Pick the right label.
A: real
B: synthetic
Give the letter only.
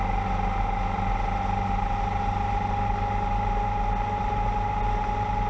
A